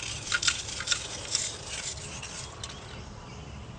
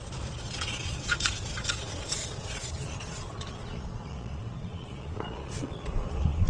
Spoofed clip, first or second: second